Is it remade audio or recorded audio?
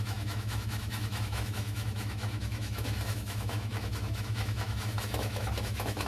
remade